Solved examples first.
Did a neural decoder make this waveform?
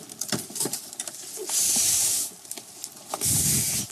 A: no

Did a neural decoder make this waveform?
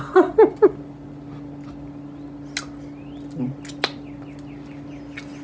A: no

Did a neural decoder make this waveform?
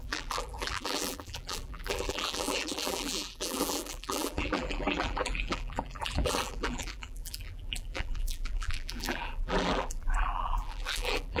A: yes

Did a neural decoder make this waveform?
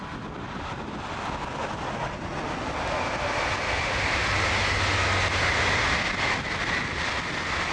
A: no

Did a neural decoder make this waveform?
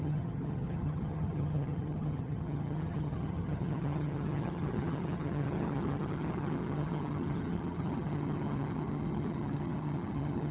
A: yes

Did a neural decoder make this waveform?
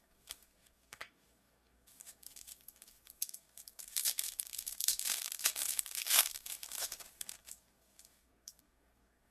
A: yes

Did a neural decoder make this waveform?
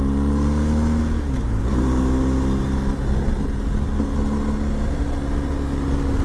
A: no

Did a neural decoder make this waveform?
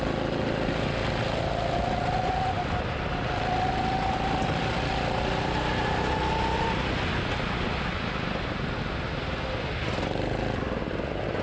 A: no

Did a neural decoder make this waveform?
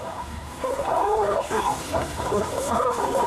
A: yes